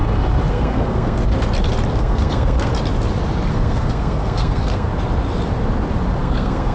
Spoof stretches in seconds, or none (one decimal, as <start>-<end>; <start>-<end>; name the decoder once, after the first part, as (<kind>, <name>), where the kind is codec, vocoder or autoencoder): 0.5-1.2 (codec, SNAC); 2.0-2.7; 3.5-4.9; 6.2-6.7